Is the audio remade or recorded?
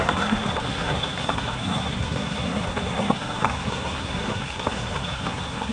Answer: remade